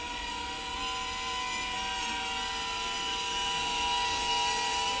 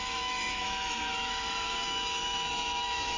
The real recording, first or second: first